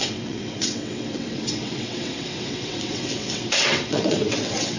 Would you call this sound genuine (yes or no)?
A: no